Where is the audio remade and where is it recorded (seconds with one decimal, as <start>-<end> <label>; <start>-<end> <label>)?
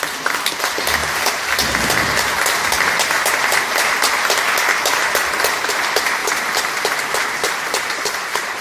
0.0-6.2 recorded; 6.2-8.6 remade